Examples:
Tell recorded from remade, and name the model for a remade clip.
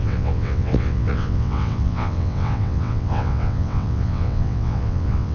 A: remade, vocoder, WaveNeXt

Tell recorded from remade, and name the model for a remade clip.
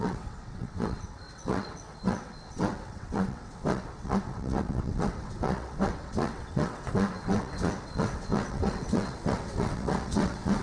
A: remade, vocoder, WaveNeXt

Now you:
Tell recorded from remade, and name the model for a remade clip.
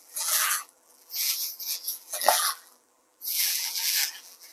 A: remade, vocoder, BigVGAN v2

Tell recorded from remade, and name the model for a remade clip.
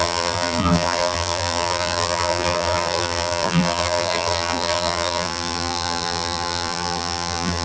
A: remade, vocoder, BigVGAN v2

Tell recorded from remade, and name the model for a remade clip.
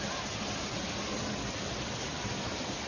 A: recorded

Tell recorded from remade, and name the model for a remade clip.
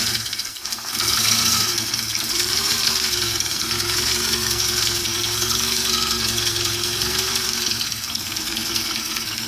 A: remade, codec, SNAC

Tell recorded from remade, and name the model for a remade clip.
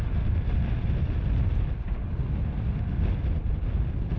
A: recorded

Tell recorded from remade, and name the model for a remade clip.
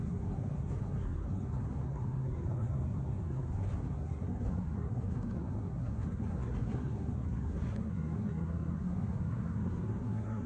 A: remade, codec, SNAC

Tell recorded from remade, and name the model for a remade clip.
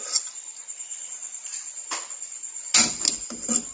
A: recorded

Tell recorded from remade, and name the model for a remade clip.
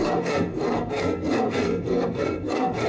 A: remade, codec, SNAC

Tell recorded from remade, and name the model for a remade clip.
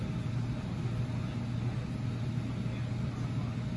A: recorded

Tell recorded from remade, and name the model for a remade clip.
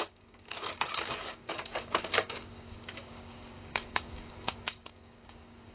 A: remade, codec, DAC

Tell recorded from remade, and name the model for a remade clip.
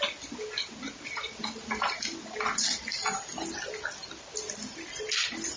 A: recorded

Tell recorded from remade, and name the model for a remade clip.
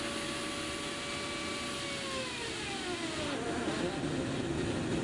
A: recorded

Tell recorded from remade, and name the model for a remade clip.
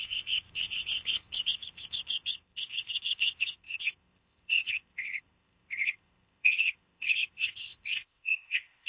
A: remade, codec, ZipCodec